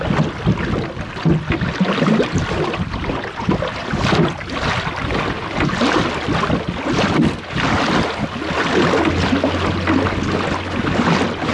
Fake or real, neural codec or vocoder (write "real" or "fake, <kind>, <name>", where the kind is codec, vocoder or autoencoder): real